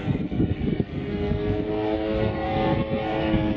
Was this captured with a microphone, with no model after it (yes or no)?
no